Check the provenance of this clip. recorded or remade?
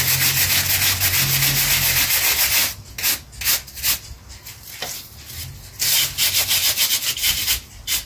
recorded